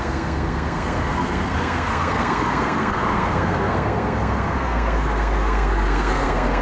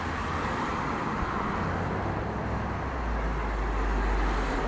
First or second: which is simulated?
first